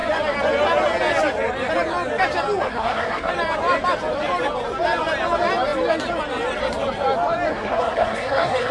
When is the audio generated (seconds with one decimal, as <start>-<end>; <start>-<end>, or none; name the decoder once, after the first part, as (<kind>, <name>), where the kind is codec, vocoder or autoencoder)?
2.7-3.3 (codec, SNAC); 7.5-8.7